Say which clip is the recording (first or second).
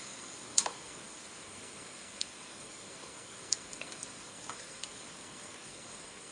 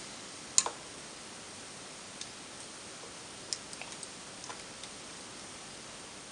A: second